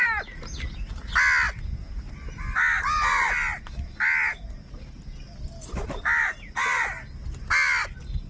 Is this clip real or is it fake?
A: real